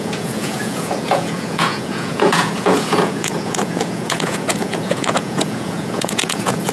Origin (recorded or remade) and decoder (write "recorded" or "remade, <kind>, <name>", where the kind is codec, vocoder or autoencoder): remade, vocoder, Vocos